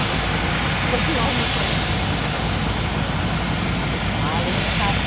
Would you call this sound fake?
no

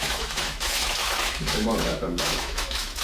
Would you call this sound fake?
yes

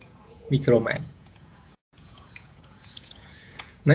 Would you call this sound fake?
yes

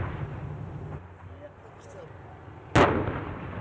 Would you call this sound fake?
no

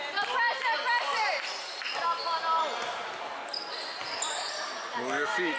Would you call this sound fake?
no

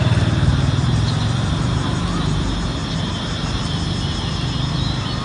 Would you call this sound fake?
no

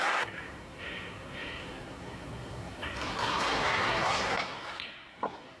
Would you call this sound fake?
yes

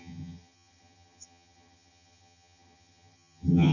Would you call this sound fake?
yes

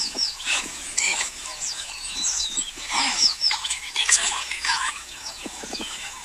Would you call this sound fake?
yes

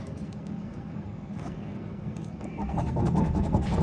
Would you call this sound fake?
yes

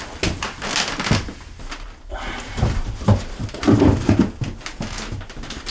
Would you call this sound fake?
no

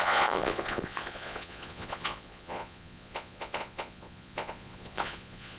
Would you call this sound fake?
yes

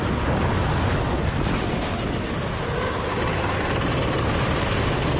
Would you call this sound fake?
no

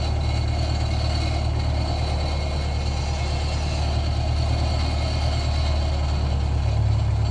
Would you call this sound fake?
yes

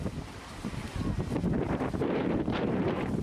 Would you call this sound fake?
yes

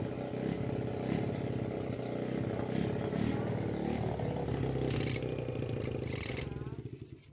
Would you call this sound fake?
no